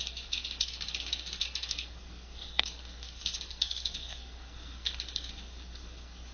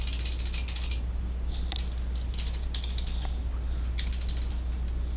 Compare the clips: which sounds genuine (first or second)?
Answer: second